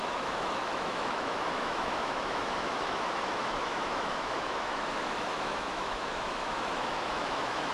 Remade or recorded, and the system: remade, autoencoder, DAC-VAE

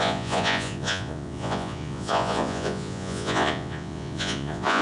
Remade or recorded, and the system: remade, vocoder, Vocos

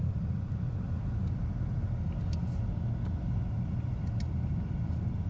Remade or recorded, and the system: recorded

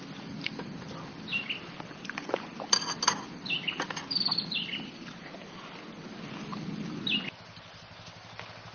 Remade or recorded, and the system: recorded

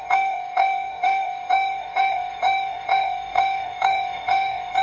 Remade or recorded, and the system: remade, autoencoder, DAC-VAE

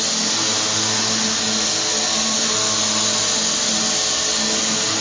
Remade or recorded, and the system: recorded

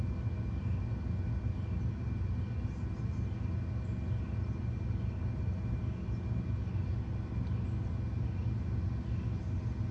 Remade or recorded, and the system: recorded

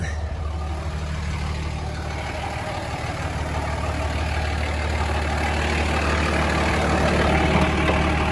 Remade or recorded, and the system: recorded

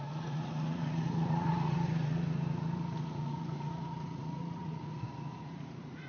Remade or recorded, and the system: remade, vocoder, Vocos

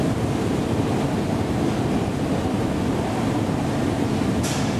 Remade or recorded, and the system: recorded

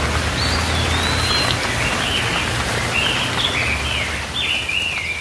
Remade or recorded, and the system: recorded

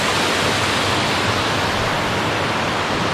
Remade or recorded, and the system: recorded